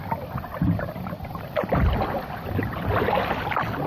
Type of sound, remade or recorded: recorded